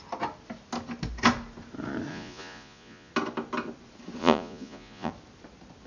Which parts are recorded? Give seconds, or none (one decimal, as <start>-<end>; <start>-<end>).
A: 0.0-2.1; 3.1-4.2; 5.1-5.9